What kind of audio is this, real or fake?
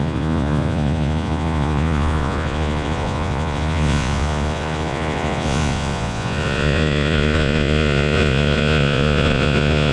fake